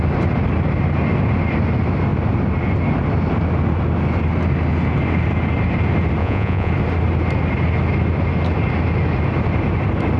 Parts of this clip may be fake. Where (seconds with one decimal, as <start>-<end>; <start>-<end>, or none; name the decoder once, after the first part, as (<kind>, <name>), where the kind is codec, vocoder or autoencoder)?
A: 6.2-6.7 (vocoder, Vocos)